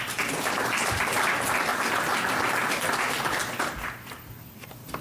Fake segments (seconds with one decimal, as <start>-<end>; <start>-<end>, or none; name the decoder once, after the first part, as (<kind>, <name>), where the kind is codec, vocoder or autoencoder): 0.0-1.7 (vocoder, BigVGAN v2); 3.6-5.0